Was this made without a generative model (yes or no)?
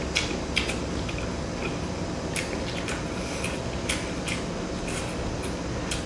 yes